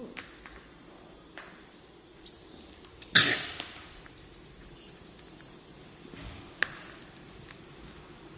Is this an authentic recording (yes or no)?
yes